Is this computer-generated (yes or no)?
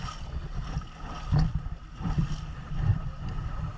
yes